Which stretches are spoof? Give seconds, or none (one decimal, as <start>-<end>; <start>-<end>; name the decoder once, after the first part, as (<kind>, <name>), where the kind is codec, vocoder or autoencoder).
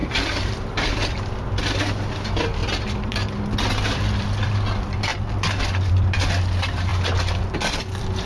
0.0-8.2 (vocoder, BigVGAN v2)